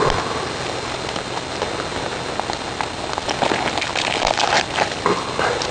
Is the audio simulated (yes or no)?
no